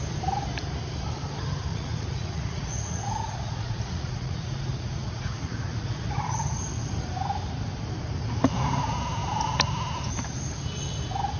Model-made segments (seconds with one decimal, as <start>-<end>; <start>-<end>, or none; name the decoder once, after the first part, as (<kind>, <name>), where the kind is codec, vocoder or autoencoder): 1.7-6.2 (vocoder, Vocos)